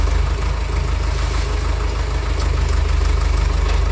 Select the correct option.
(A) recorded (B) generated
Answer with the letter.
A